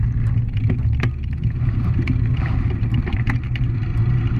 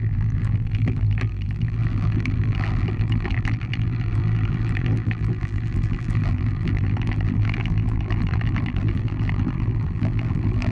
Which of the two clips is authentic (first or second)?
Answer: first